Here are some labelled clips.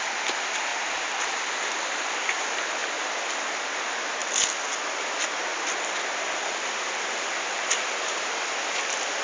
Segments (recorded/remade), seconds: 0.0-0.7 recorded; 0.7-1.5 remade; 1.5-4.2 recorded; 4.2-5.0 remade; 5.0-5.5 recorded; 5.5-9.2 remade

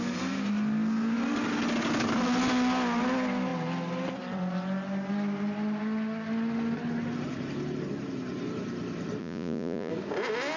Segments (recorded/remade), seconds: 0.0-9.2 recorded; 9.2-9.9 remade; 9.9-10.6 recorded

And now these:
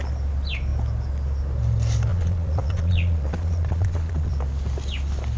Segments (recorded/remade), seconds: 0.0-2.1 recorded; 2.1-4.3 remade; 4.3-5.4 recorded